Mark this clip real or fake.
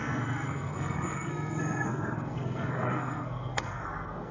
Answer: fake